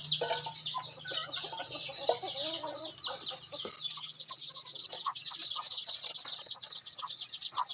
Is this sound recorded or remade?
recorded